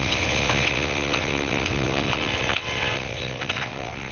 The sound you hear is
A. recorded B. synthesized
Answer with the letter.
B